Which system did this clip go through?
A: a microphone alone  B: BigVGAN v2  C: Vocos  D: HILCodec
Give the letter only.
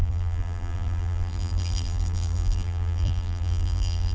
B